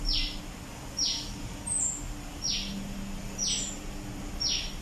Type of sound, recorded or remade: recorded